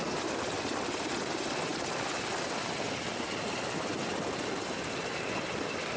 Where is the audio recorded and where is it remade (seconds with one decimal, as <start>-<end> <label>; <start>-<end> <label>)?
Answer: 0.0-6.0 remade